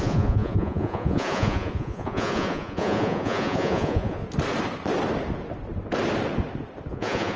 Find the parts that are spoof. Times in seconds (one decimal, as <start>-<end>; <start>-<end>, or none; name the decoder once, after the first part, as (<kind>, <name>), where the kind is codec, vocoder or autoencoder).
0.0-4.2 (vocoder, Vocos); 6.9-7.4